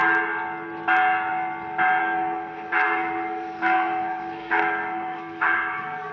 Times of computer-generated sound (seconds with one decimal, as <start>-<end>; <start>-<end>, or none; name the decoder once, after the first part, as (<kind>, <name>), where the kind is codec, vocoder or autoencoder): 2.0-6.1 (codec, SNAC)